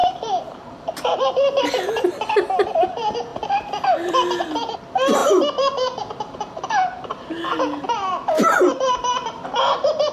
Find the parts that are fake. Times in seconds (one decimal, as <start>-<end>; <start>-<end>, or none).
0.0-1.6; 3.3-4.4; 5.2-10.1